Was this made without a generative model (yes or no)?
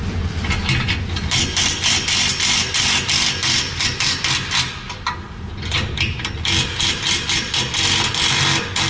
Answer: yes